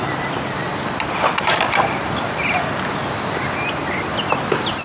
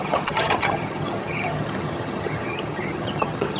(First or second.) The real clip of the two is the first